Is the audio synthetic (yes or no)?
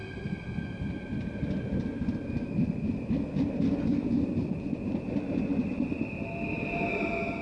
no